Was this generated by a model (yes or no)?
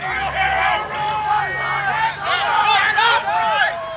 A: no